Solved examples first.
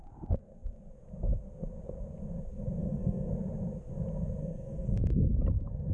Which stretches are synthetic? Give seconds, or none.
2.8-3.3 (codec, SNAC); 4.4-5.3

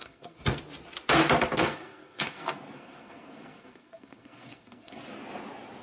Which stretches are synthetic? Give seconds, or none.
0.0-0.6 (codec, SNAC); 1.6-5.0

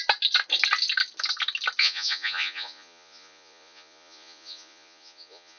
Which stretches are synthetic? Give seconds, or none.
1.8-5.6 (vocoder, Vocos)

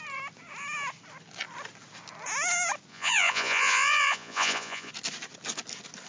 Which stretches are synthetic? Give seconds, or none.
2.9-4.9 (vocoder, Vocos)

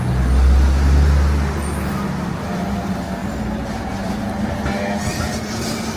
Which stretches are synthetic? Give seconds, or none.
3.2-4.8 (vocoder, BigVGAN v2)

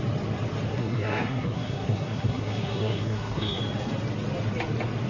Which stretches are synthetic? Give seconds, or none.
0.7-3.6 (codec, SNAC)

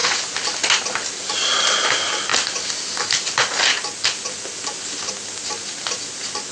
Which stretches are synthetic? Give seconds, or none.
none

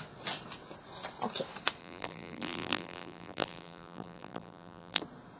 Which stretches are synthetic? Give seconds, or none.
1.8-5.0 (vocoder, BigVGAN v2)